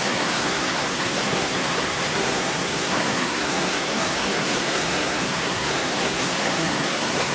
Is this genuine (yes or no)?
no